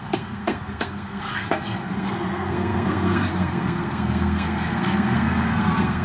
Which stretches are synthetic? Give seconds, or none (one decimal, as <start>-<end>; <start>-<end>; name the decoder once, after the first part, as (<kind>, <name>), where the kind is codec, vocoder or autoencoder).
0.0-6.0 (codec, SNAC)